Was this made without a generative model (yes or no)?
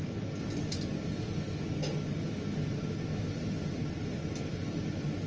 yes